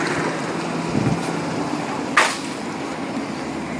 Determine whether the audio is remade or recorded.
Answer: recorded